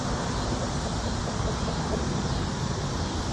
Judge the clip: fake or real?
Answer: real